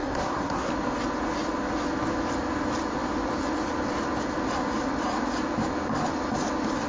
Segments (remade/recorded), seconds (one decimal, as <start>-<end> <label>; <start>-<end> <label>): 0.0-0.7 remade; 0.7-6.9 recorded